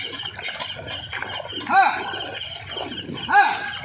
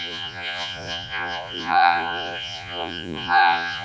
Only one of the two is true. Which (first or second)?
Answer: first